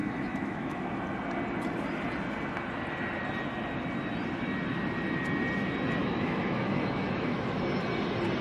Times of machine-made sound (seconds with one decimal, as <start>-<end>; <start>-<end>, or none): 0.0-0.9; 6.0-7.6